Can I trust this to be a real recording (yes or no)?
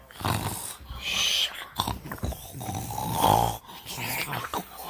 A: yes